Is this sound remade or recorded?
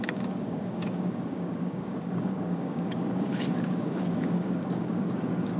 remade